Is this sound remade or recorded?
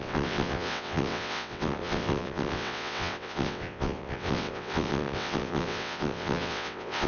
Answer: remade